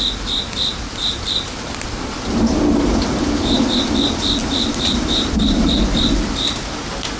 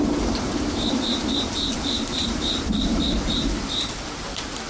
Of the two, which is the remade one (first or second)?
second